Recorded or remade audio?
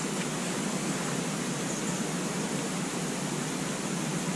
recorded